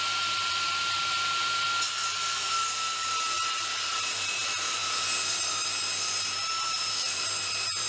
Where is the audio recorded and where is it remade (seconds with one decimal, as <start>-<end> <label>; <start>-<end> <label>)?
0.0-7.9 remade

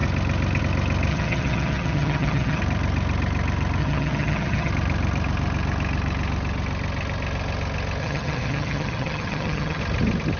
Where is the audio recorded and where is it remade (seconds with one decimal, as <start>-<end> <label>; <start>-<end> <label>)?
0.0-1.1 recorded; 1.1-2.6 remade; 2.6-3.8 recorded; 3.8-4.7 remade; 4.7-8.0 recorded; 8.0-9.8 remade; 9.8-10.4 recorded

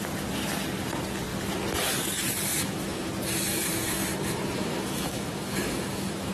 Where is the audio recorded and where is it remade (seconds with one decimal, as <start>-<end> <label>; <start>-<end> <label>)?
0.0-2.5 recorded; 2.5-3.1 remade; 3.1-3.5 recorded; 3.5-6.3 remade

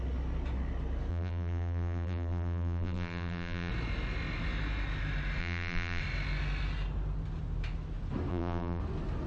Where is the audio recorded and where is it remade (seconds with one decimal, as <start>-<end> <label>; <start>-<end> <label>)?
0.0-1.1 recorded; 1.1-3.7 remade; 3.7-5.4 recorded; 5.4-6.0 remade; 6.0-8.3 recorded; 8.3-8.8 remade; 8.8-9.3 recorded

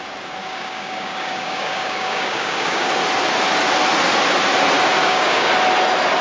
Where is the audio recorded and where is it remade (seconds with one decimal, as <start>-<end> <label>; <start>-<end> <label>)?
0.0-0.4 recorded; 0.4-2.9 remade; 2.9-5.0 recorded; 5.0-5.5 remade; 5.5-6.2 recorded

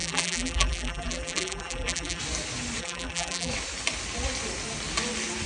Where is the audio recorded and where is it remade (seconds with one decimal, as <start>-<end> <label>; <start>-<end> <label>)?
0.0-2.2 remade; 2.2-2.8 recorded; 2.8-3.5 remade; 3.5-5.5 recorded

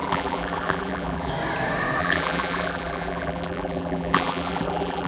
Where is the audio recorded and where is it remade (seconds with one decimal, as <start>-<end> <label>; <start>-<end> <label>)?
0.0-1.3 remade; 1.3-2.0 recorded; 2.0-5.1 remade

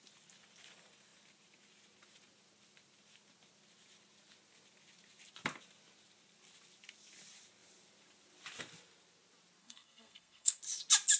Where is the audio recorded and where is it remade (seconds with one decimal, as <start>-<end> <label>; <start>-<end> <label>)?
0.0-9.6 recorded; 9.6-10.6 remade; 10.6-11.2 recorded